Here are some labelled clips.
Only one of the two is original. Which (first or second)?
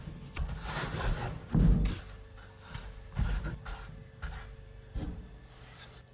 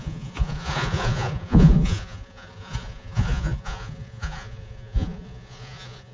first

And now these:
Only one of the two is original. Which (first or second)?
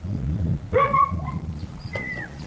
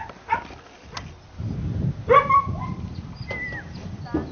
second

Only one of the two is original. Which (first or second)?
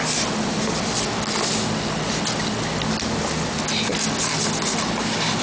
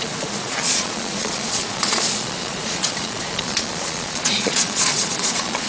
first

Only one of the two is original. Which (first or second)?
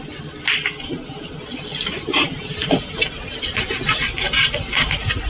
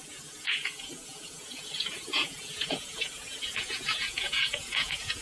first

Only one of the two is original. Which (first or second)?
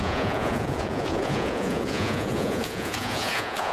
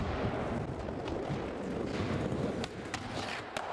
second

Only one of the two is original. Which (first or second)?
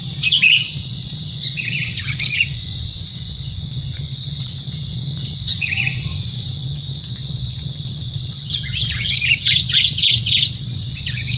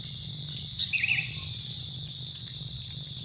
second